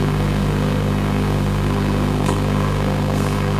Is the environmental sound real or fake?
fake